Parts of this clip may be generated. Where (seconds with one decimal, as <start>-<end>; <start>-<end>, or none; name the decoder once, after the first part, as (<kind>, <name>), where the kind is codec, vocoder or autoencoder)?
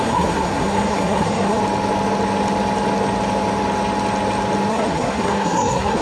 0.0-1.6 (codec, SNAC); 4.7-6.0